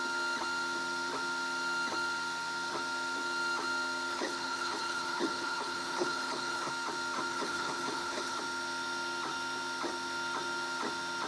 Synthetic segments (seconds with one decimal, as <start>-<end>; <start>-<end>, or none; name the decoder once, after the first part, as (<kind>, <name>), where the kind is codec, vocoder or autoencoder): 4.1-6.7 (codec, HILCodec); 7.3-8.4